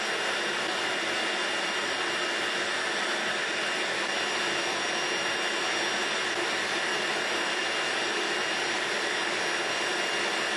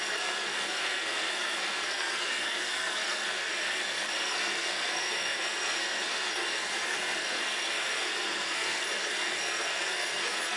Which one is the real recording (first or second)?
first